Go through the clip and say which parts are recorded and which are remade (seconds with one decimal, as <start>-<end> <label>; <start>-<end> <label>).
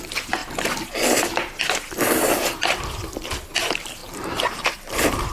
0.0-4.0 recorded; 4.0-5.3 remade